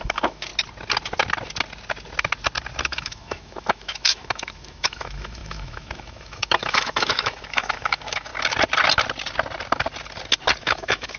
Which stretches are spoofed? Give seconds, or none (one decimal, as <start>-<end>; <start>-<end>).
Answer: 0.0-0.5; 2.8-8.3; 10.6-11.2